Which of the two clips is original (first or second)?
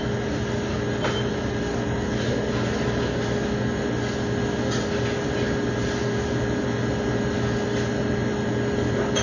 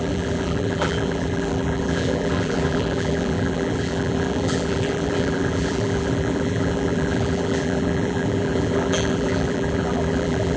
first